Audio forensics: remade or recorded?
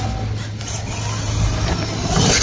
recorded